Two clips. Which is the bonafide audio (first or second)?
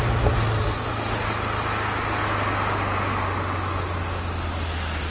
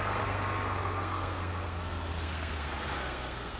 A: first